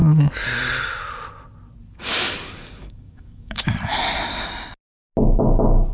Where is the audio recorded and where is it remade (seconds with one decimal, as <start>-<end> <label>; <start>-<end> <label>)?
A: 0.0-2.8 recorded; 2.8-3.6 remade; 3.6-5.9 recorded